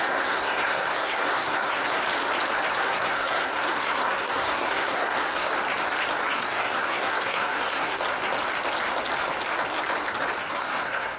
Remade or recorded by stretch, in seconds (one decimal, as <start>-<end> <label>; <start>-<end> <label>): 0.0-2.0 remade; 2.0-2.7 recorded; 2.7-5.5 remade; 5.5-6.3 recorded; 6.3-8.0 remade; 8.0-10.5 recorded; 10.5-11.2 remade